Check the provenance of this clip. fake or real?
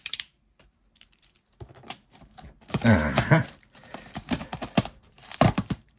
fake